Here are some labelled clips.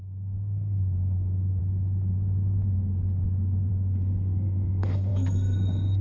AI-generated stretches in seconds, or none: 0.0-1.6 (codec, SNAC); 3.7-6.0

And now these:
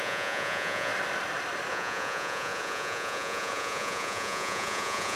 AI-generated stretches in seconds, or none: 0.0-0.9 (vocoder, Vocos); 1.7-5.2

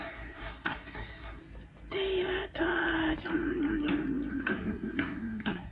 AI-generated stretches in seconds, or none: 0.0-1.4 (codec, SNAC); 4.3-5.7

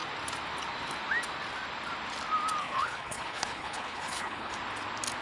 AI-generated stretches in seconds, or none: 2.6-4.5 (codec, HILCodec)